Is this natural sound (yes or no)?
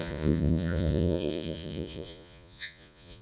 no